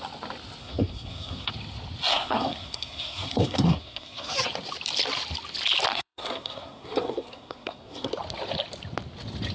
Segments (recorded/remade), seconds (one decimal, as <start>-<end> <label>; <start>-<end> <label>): 0.0-0.6 recorded; 0.6-1.5 remade; 1.5-2.1 recorded; 2.1-4.3 remade; 4.3-5.9 recorded; 5.9-8.1 remade; 8.1-9.5 recorded